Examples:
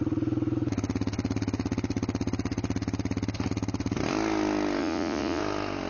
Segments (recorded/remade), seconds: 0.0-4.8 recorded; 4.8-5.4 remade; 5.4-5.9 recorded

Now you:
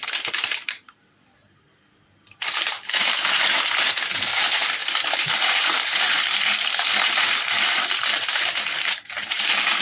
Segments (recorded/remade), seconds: 0.0-4.8 remade; 4.8-5.3 recorded; 5.3-9.8 remade

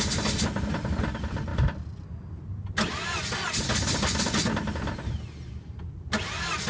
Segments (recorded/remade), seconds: 0.0-6.7 recorded

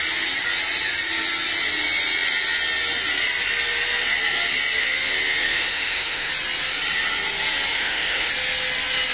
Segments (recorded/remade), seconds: 0.0-5.4 recorded; 5.4-6.3 remade; 6.3-7.7 recorded; 7.7-8.3 remade; 8.3-9.1 recorded

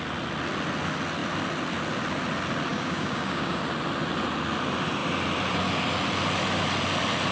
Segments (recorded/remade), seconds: 0.0-2.7 recorded; 2.7-3.6 remade; 3.6-7.3 recorded

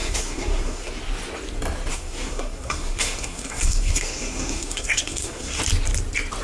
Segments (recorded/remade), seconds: 0.0-0.9 remade; 0.9-1.9 recorded; 1.9-5.6 remade; 5.6-6.4 recorded